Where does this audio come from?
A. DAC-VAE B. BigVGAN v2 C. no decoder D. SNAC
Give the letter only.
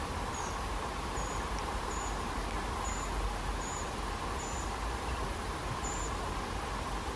C